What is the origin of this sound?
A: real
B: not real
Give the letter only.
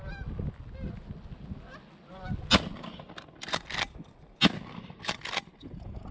A